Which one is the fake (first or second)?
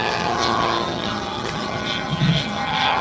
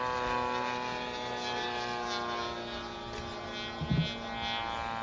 first